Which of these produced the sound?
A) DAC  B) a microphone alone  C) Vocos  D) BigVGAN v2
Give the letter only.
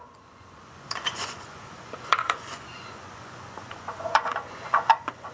C